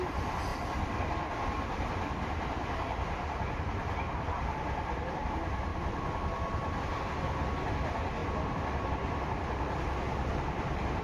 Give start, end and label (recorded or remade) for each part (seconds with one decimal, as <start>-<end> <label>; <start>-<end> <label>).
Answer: 0.0-0.5 recorded; 0.5-5.3 remade; 5.3-5.7 recorded; 5.7-7.0 remade; 7.0-8.2 recorded; 8.2-8.9 remade; 8.9-11.0 recorded